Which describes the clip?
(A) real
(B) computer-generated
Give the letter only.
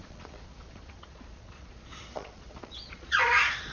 B